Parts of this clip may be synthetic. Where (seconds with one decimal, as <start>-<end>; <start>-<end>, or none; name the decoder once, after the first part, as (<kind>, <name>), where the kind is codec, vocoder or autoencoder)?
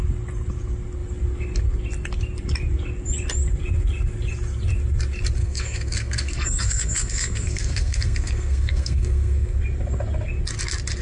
5.4-9.6 (codec, SNAC)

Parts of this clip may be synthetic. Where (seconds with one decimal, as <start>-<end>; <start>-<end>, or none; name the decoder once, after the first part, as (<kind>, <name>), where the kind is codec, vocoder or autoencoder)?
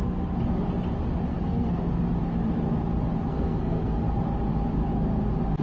1.3-1.8 (codec, SNAC); 3.3-4.0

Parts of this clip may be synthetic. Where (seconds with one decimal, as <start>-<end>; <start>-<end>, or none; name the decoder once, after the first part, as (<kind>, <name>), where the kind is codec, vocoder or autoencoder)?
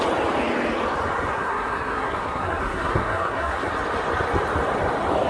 1.3-3.7 (codec, SNAC)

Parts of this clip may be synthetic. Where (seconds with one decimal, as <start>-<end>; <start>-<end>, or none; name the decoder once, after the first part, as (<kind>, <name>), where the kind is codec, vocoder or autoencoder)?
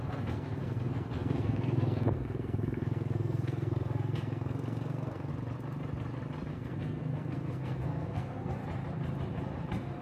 0.0-5.3 (codec, SNAC); 6.5-8.6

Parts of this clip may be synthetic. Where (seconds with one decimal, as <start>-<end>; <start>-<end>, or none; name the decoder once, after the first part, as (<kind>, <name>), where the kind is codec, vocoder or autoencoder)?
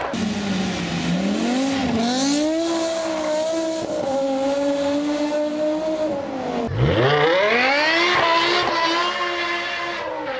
none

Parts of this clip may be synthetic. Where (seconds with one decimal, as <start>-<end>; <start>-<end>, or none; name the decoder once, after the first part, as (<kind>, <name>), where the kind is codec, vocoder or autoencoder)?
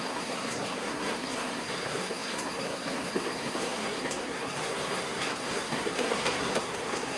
0.0-7.2 (codec, SNAC)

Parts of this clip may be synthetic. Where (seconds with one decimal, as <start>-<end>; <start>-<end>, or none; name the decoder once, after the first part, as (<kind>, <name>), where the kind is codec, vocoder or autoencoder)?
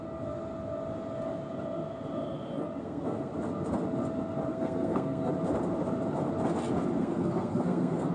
2.8-3.3 (codec, SNAC); 4.5-5.3; 7.0-8.1